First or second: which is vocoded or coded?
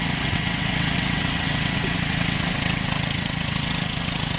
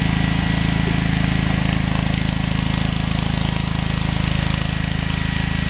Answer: first